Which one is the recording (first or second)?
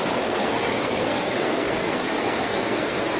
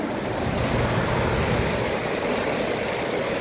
second